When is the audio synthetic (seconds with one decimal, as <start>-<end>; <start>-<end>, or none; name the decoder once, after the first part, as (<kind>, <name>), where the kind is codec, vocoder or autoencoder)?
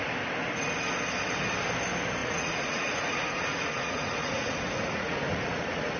2.2-6.0 (vocoder, Vocos)